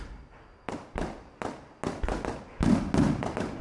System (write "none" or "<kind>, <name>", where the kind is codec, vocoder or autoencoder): none